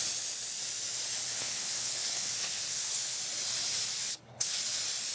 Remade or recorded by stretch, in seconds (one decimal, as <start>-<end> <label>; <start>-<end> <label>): 0.0-1.3 recorded; 1.3-3.2 remade; 3.2-4.0 recorded; 4.0-4.6 remade; 4.6-5.1 recorded